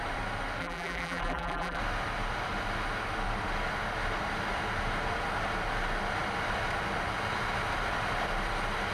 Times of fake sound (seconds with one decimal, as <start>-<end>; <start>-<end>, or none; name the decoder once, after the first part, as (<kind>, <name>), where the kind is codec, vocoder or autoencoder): 0.6-1.8 (vocoder, BigVGAN v2)